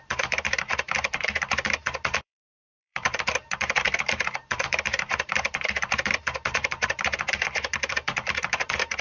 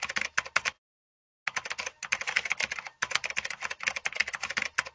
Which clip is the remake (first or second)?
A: first